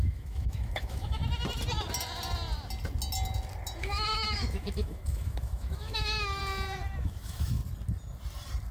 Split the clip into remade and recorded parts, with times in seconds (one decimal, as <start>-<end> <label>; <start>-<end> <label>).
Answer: 0.0-1.2 remade; 1.2-3.8 recorded; 3.8-6.4 remade; 6.4-7.0 recorded; 7.0-7.6 remade; 7.6-8.7 recorded